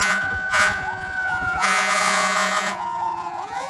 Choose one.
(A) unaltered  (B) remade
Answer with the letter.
B